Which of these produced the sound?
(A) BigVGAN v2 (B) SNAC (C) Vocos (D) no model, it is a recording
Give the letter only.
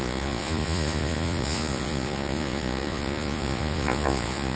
C